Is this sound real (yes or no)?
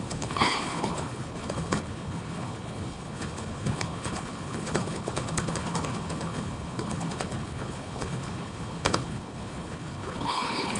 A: no